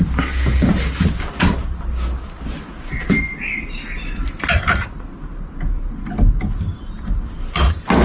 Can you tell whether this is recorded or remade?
recorded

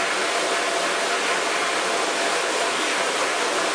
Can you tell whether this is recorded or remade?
recorded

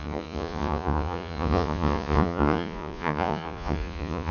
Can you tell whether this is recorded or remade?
remade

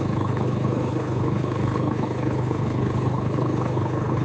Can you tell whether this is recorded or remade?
remade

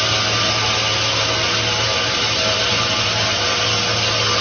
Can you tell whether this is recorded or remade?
recorded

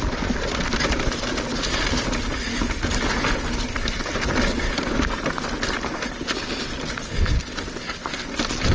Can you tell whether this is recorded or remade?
recorded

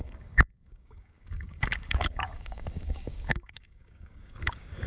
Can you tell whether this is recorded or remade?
remade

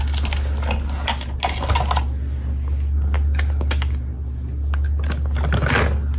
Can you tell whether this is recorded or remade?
recorded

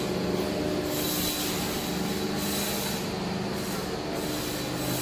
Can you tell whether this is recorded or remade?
recorded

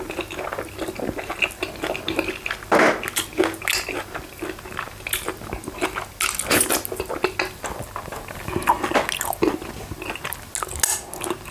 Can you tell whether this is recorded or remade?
recorded